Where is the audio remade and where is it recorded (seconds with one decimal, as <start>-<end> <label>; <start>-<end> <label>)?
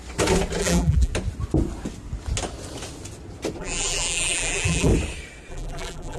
0.0-0.6 recorded; 0.6-1.1 remade; 1.1-3.6 recorded; 3.6-4.9 remade; 4.9-5.5 recorded; 5.5-6.2 remade